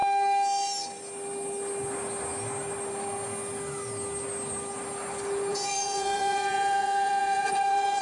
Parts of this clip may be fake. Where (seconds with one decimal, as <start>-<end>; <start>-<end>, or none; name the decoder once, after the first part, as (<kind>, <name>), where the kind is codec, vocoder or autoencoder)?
5.5-8.0 (vocoder, Vocos)